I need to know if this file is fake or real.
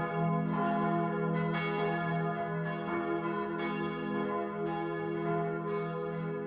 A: real